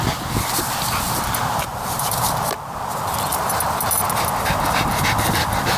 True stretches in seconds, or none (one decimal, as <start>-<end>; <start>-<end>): 0.0-1.7; 2.3-3.3; 4.0-5.8